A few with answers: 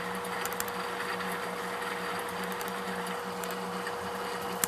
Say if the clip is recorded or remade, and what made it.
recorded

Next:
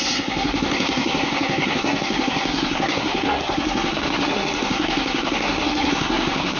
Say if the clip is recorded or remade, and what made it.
remade, codec, SNAC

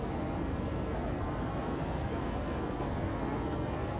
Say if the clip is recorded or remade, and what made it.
remade, codec, SNAC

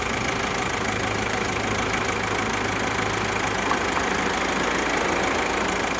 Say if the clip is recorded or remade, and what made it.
recorded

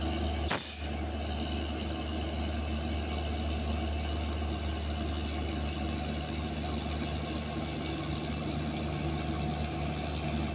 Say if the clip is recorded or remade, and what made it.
recorded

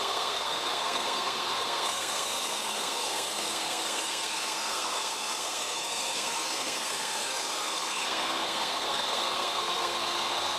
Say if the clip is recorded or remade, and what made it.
remade, codec, SNAC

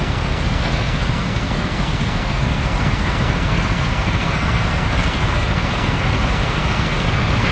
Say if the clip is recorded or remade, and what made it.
remade, codec, SNAC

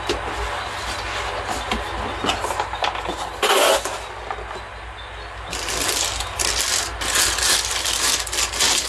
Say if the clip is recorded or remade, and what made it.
recorded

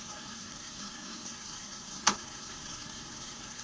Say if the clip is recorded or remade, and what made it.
remade, codec, SNAC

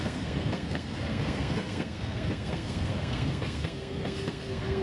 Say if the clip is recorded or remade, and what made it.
remade, codec, SNAC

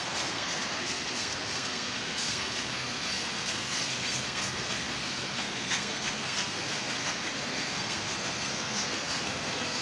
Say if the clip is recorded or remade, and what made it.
remade, codec, SNAC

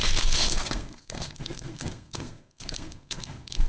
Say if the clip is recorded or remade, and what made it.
remade, codec, SNAC